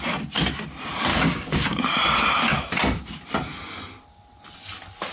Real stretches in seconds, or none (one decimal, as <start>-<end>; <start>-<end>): 0.0-1.1; 1.8-5.1